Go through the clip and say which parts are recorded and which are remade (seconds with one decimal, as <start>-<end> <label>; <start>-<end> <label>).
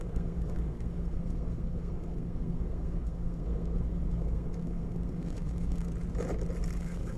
0.0-5.9 remade; 5.9-6.8 recorded; 6.8-7.2 remade